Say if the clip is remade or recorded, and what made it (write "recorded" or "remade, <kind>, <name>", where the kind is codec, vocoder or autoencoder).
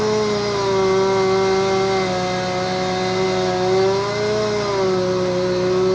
recorded